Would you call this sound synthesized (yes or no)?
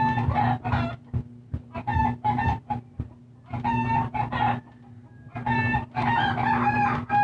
no